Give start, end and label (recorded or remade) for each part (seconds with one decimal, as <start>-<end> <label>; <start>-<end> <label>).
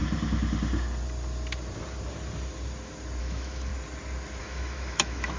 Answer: 0.0-3.2 recorded; 3.2-3.7 remade; 3.7-4.4 recorded; 4.4-5.4 remade